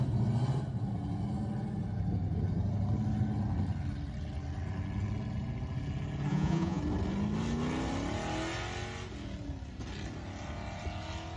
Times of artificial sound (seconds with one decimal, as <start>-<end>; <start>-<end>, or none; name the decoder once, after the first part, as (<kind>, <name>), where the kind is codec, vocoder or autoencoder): 6.3-6.8 (vocoder, Vocos)